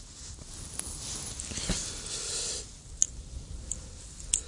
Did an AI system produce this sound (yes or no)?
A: no